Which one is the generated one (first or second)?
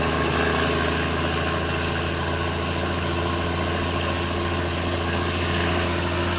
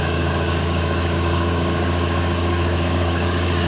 second